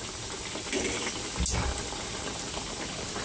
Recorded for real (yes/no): yes